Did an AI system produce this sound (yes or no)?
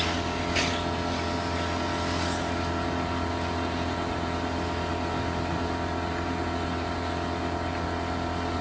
no